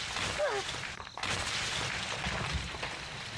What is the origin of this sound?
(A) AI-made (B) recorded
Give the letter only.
B